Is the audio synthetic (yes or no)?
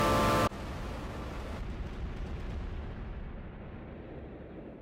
no